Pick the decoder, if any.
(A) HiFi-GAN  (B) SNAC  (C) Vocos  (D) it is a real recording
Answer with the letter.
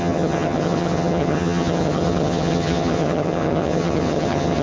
A